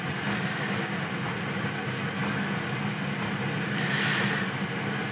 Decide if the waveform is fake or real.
real